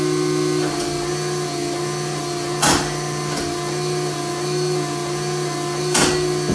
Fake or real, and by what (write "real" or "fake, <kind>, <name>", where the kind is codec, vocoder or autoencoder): real